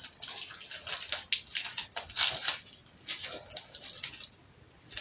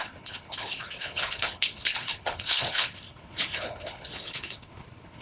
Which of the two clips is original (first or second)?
first